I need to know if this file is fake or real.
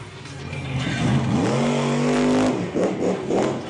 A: real